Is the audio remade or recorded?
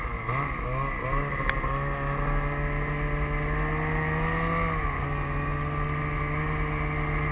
recorded